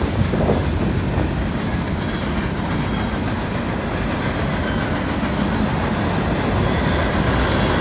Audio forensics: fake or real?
real